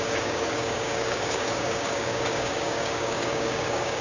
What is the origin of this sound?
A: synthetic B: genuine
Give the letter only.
A